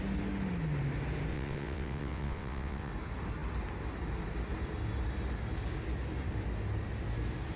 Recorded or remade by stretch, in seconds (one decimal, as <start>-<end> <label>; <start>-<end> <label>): 0.0-1.3 recorded; 1.3-2.9 remade; 2.9-7.6 recorded